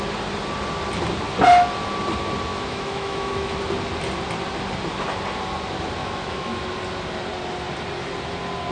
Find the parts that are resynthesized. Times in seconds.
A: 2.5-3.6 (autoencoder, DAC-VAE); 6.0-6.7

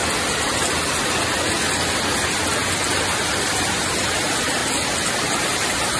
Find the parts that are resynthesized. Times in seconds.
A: 3.6-4.6 (vocoder, BigVGAN v2); 5.2-6.0

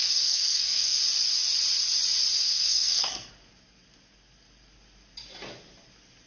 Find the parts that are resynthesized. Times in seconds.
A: 0.0-1.0 (codec, SNAC); 2.4-3.3

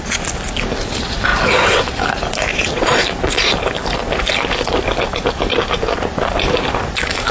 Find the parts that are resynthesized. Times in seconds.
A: 2.5-3.0 (vocoder, Vocos)

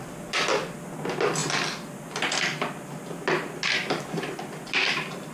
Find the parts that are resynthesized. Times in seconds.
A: none